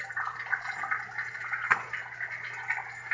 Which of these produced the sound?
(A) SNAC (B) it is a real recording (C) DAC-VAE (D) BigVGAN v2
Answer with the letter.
B